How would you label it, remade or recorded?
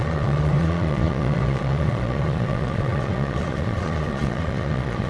remade